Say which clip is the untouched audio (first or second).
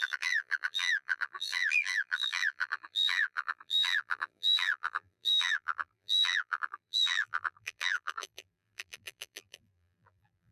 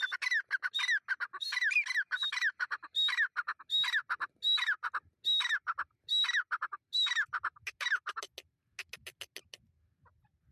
second